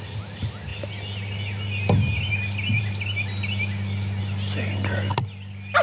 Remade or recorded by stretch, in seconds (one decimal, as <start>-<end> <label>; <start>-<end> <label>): 0.0-5.8 recorded